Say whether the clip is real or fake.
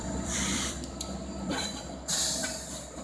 fake